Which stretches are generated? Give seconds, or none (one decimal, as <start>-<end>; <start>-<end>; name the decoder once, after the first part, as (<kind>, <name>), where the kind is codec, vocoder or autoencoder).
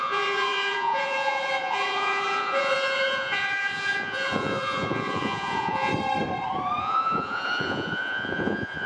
0.0-5.9 (vocoder, Vocos); 6.8-8.9